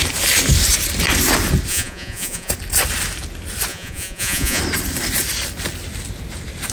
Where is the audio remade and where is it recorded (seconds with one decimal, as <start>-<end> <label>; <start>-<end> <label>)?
0.0-1.7 recorded; 1.7-2.5 remade; 2.5-3.7 recorded; 3.7-4.6 remade; 4.6-6.7 recorded